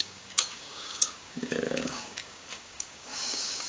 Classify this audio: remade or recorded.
remade